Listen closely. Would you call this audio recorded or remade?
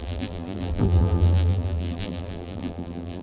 remade